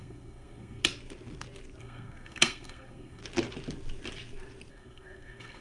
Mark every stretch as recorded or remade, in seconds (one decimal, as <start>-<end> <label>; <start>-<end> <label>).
0.0-0.8 remade; 0.8-1.8 recorded; 1.8-3.2 remade; 3.2-4.7 recorded; 4.7-5.6 remade